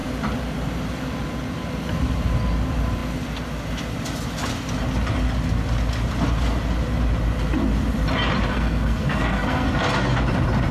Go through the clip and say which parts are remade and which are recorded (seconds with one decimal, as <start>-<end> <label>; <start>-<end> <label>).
0.0-8.5 recorded; 8.5-9.8 remade; 9.8-10.7 recorded